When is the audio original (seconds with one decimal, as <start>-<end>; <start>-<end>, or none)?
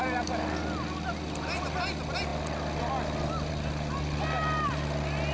0.0-5.3